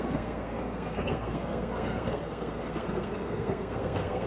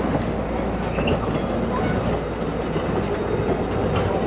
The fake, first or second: first